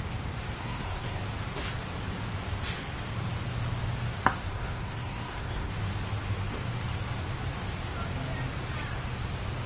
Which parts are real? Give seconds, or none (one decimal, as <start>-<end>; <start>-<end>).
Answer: 0.0-0.6; 1.2-4.5; 5.7-9.7